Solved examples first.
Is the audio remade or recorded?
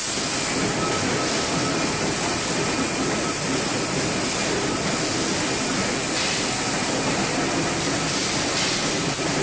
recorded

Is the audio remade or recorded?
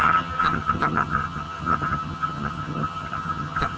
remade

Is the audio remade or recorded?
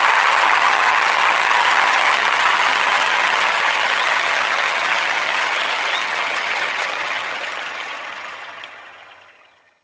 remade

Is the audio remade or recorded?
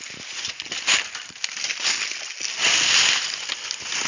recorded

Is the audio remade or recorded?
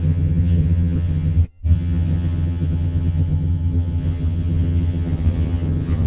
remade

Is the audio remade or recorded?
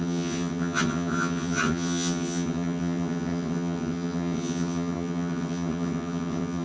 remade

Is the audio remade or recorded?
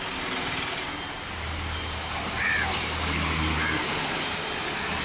recorded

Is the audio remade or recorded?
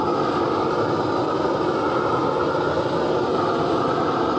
recorded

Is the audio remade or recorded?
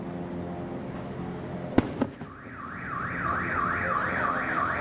recorded